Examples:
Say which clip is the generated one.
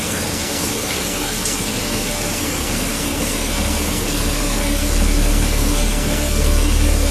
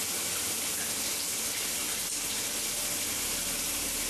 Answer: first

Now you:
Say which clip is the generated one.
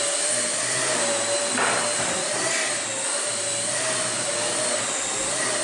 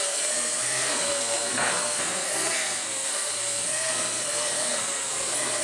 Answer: second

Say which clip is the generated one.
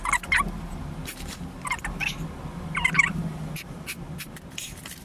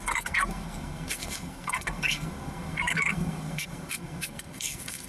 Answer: second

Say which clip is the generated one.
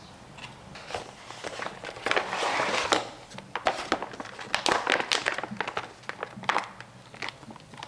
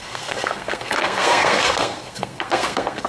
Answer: second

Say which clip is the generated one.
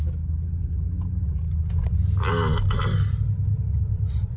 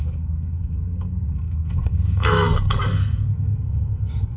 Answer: second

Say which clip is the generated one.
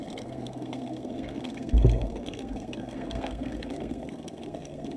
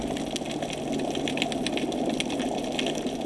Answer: first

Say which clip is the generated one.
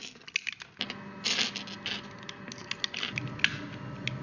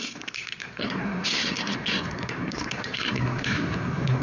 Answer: second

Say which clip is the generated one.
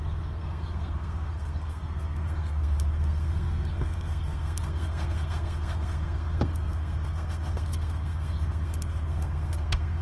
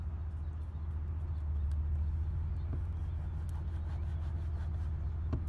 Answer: first